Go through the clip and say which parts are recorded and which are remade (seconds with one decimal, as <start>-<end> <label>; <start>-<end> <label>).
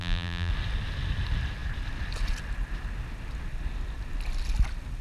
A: 0.0-0.5 remade; 0.5-5.0 recorded